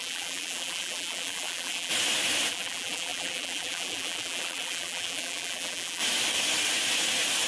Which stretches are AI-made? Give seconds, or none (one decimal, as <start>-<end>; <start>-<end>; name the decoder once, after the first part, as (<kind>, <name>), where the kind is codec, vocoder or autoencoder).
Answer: 0.0-1.9 (vocoder, BigVGAN v2); 2.5-6.0